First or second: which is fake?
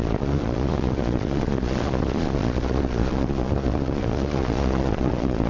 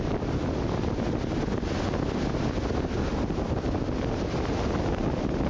first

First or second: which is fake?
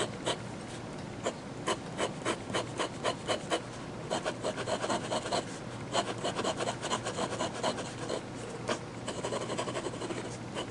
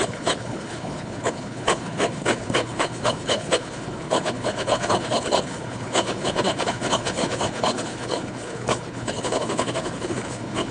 second